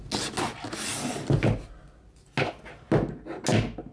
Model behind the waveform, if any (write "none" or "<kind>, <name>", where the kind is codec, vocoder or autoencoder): none